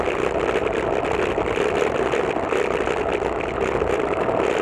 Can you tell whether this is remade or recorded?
recorded